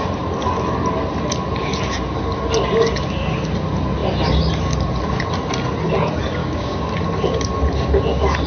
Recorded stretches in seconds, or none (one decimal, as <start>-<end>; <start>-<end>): 0.0-6.4; 6.9-8.5